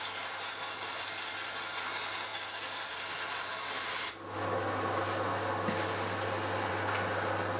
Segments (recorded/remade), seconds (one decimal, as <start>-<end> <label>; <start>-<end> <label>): 0.0-7.6 recorded